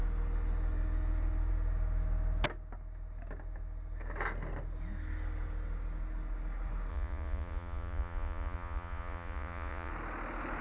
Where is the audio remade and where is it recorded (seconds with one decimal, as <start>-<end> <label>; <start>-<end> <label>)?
0.0-6.9 recorded; 6.9-9.9 remade; 9.9-10.6 recorded